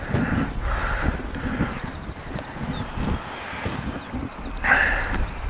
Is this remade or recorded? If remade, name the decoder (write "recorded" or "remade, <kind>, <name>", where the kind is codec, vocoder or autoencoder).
recorded